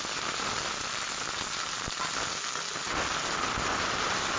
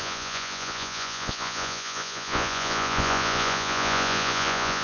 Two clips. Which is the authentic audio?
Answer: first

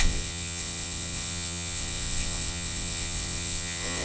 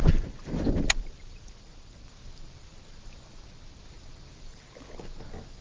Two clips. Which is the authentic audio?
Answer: second